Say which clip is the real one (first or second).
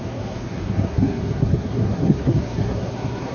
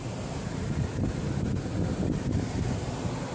second